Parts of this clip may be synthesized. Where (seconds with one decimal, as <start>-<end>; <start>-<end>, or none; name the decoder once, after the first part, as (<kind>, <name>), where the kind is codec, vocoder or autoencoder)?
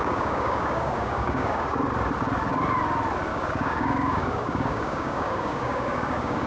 0.0-1.8 (codec, DAC); 3.3-6.5